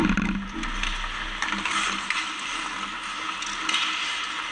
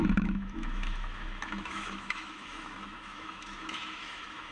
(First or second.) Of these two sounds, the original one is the first